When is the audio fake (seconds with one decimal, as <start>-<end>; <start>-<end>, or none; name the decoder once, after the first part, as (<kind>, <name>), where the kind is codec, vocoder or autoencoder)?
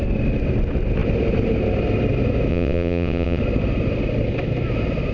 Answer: 2.5-3.4 (vocoder, WaveNeXt)